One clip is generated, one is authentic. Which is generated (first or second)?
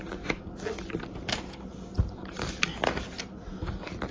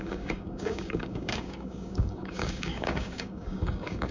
second